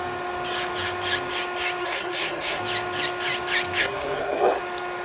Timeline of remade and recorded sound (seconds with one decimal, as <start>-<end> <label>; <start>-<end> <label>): 0.0-1.8 recorded; 1.8-2.6 remade; 2.6-3.8 recorded; 3.8-4.6 remade; 4.6-5.0 recorded